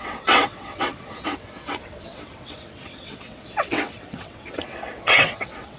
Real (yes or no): no